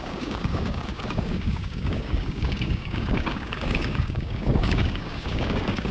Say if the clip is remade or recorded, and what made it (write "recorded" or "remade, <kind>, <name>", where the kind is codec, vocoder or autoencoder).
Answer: remade, codec, DAC